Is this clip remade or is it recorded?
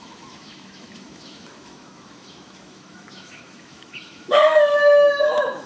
remade